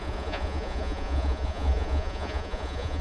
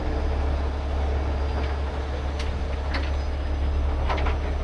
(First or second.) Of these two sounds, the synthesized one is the first